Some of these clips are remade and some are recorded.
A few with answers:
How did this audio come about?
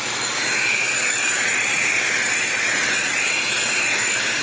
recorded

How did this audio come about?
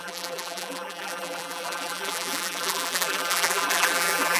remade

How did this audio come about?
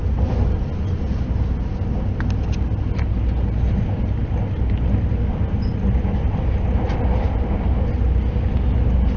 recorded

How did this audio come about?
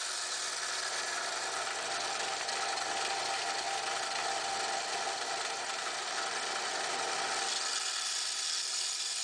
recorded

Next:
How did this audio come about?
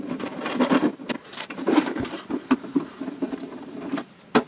remade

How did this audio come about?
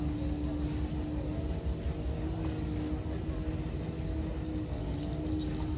recorded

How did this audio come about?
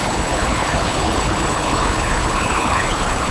remade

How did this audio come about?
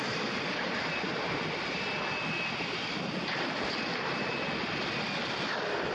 recorded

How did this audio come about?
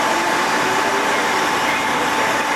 recorded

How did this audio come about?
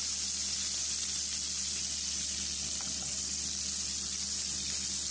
recorded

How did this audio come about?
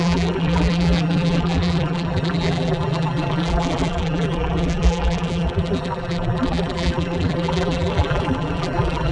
remade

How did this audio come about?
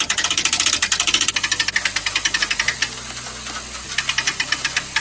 recorded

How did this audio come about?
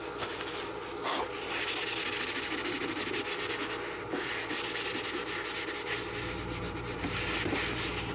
recorded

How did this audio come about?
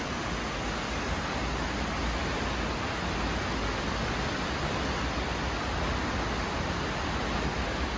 recorded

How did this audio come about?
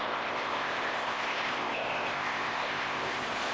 remade